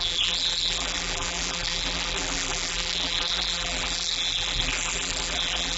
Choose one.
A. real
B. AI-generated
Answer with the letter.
B